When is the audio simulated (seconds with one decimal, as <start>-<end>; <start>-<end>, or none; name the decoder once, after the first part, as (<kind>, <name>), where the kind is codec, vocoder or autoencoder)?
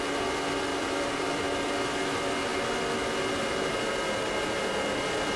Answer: 0.7-1.8 (vocoder, BigVGAN v2)